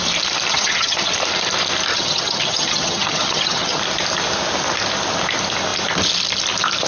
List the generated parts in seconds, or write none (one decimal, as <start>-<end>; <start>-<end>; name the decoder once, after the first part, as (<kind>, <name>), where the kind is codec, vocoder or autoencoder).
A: 0.5-1.1 (vocoder, HiFi-GAN); 1.9-3.8